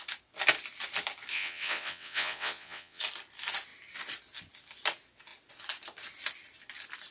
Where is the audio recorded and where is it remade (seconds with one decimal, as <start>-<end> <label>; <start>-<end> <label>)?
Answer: 0.0-1.3 recorded; 1.3-3.0 remade; 3.0-7.1 recorded